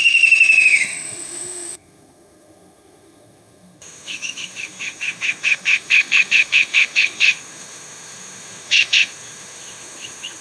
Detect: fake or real fake